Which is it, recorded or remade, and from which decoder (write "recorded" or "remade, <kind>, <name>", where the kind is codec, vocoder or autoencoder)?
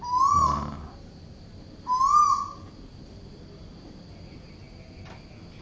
recorded